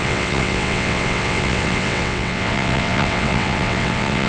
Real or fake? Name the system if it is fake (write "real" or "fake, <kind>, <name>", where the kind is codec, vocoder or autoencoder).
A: fake, vocoder, WaveNeXt